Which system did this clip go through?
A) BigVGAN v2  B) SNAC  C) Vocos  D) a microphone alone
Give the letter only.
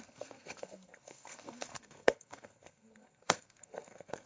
B